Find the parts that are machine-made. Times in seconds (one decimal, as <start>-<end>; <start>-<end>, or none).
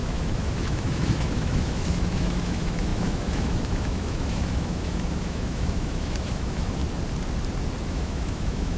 0.0-6.8; 7.9-8.8